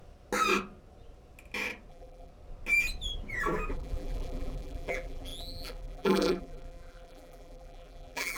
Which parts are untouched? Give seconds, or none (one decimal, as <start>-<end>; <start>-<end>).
0.0-1.9; 2.3-3.7